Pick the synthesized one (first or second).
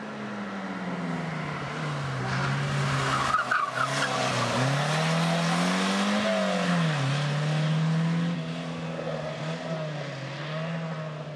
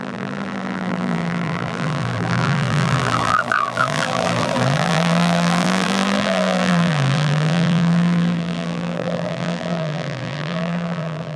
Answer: second